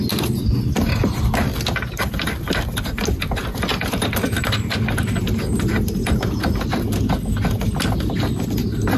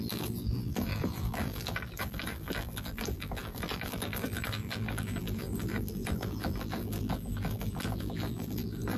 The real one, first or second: first